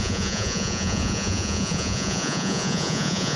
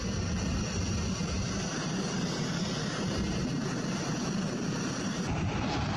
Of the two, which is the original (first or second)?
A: second